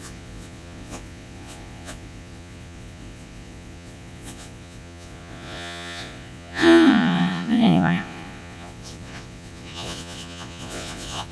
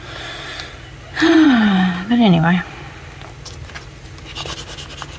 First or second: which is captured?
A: second